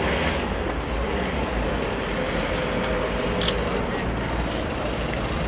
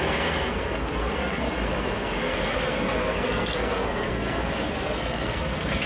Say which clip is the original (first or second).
first